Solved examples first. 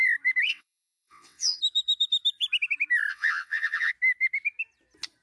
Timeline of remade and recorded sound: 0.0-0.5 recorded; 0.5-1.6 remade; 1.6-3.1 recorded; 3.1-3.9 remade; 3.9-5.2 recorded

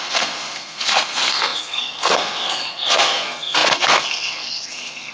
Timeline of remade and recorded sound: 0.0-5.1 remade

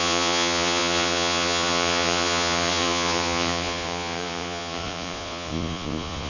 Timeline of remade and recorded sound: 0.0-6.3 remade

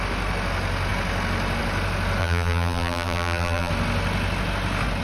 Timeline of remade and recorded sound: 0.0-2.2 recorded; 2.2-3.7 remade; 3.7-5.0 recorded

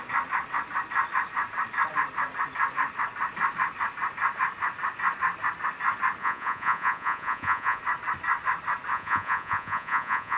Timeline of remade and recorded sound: 0.0-6.2 recorded; 6.2-7.8 remade; 7.8-8.9 recorded; 8.9-10.4 remade

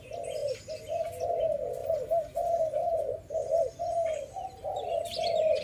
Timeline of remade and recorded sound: 0.0-5.6 recorded

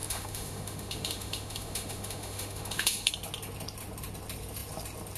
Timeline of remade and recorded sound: 0.0-3.1 remade; 3.1-5.2 recorded

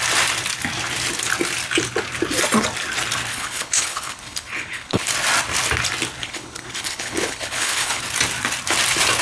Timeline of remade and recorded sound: 0.0-3.3 recorded; 3.3-5.1 remade; 5.1-6.2 recorded; 6.2-8.0 remade; 8.0-9.2 recorded